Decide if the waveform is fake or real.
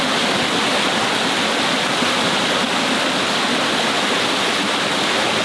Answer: real